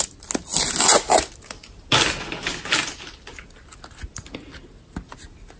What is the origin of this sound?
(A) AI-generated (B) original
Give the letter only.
B